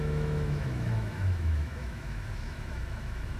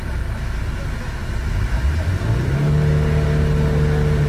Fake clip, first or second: first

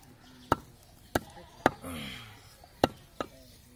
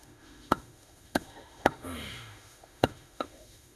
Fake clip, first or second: second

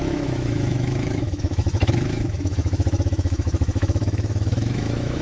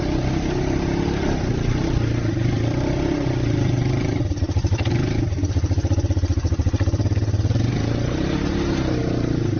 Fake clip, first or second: first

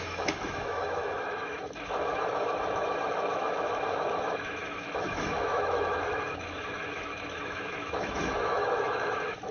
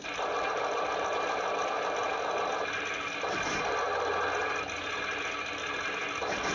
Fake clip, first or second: first